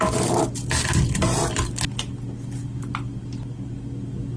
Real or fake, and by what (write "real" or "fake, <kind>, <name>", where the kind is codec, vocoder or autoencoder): real